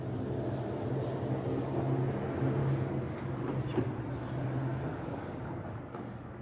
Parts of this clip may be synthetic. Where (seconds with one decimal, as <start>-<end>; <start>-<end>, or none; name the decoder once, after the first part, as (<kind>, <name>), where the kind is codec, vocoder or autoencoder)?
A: 2.6-3.5 (codec, DAC); 4.7-6.4